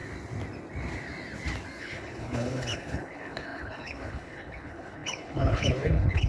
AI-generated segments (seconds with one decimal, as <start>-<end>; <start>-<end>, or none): 1.8-6.3